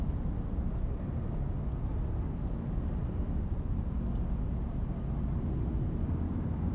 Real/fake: real